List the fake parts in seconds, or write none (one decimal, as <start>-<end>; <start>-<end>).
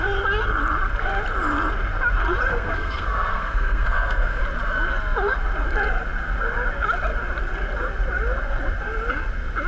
2.5-4.4